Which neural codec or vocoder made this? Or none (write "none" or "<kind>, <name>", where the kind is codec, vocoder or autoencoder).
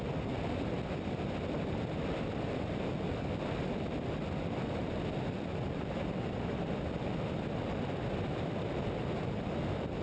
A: none